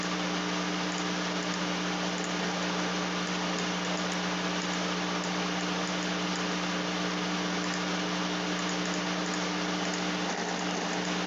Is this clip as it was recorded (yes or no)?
yes